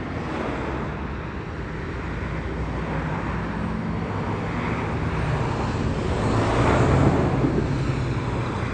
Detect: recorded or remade recorded